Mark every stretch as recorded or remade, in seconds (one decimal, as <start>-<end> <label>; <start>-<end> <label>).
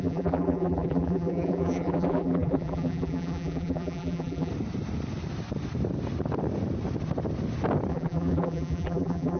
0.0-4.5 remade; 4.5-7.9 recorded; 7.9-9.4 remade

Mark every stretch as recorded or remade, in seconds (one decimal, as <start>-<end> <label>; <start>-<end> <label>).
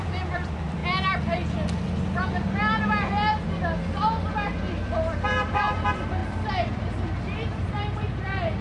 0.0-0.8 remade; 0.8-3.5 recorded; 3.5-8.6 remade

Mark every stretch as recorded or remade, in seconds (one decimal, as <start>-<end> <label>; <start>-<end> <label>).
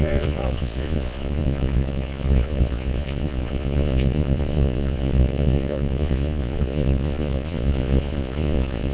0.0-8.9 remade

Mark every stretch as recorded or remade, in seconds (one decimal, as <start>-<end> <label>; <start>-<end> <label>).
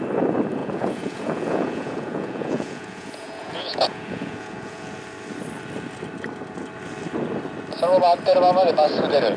0.0-0.6 recorded; 0.6-5.0 remade; 5.0-9.4 recorded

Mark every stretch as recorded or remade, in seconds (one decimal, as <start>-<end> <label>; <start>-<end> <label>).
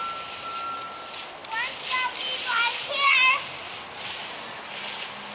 0.0-5.3 recorded